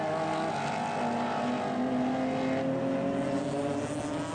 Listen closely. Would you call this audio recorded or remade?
recorded